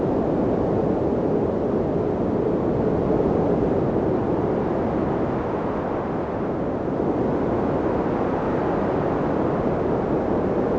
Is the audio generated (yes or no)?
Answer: no